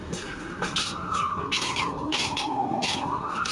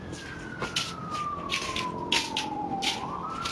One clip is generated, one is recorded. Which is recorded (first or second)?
second